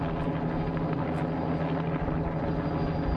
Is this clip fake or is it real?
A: real